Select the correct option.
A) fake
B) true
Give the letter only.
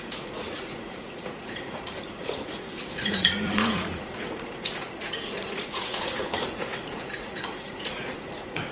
A